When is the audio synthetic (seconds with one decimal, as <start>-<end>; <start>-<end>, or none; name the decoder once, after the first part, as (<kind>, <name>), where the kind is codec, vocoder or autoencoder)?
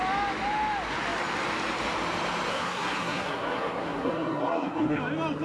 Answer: 2.5-5.0 (codec, SNAC)